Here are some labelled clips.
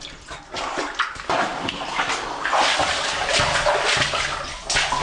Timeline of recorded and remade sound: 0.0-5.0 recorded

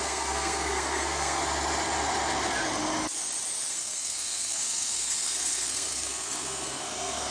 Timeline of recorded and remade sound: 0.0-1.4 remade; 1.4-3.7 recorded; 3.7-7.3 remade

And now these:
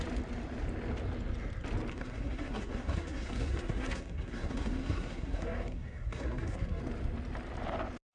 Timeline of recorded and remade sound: 0.0-1.9 recorded; 1.9-6.8 remade; 6.8-8.1 recorded

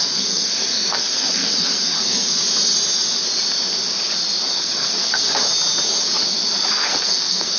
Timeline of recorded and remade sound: 0.0-2.4 remade; 2.4-4.5 recorded; 4.5-5.4 remade; 5.4-6.7 recorded; 6.7-7.6 remade

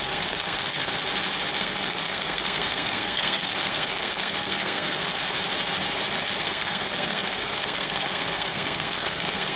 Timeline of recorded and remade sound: 0.0-0.9 remade; 0.9-1.6 recorded; 1.6-5.2 remade; 5.2-6.4 recorded; 6.4-9.6 remade